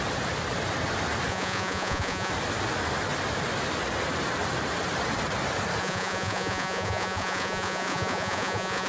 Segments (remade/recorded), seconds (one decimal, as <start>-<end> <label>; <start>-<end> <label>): 0.0-1.3 recorded; 1.3-2.3 remade; 2.3-5.8 recorded; 5.8-8.9 remade